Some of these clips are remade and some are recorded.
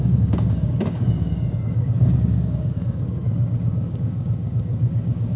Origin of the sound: remade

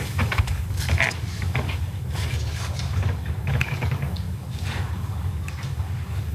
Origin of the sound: remade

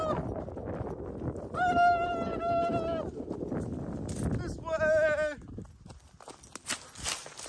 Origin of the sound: recorded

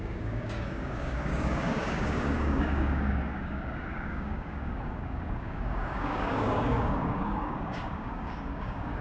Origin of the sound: remade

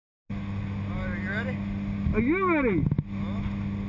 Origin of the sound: recorded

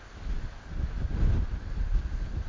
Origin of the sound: recorded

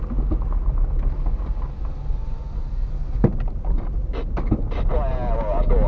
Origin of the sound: recorded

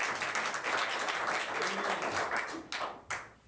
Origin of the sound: recorded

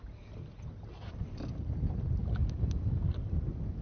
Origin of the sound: recorded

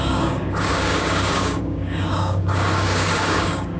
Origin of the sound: remade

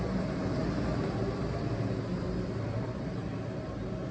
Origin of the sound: recorded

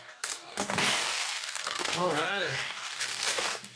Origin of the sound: remade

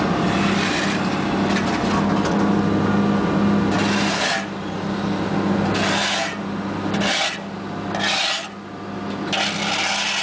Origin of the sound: recorded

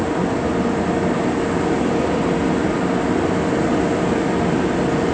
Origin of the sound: recorded